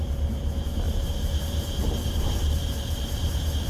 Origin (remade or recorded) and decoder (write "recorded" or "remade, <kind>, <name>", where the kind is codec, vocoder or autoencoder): remade, vocoder, BigVGAN v2